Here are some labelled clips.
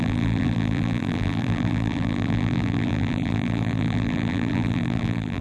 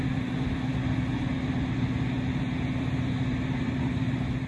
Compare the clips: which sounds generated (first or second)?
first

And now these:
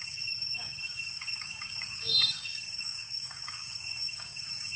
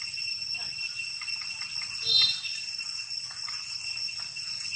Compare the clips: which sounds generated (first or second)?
first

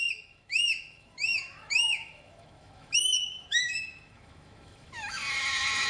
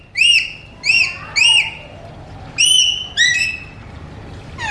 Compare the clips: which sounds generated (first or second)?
first